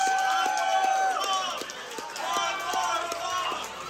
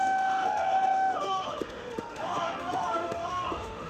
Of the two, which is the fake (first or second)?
second